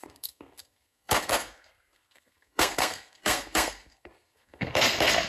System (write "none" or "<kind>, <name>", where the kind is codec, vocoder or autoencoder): codec, SNAC